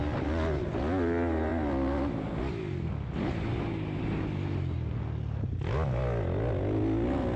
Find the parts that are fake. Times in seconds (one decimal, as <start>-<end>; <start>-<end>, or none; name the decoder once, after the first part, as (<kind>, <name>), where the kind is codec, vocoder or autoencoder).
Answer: none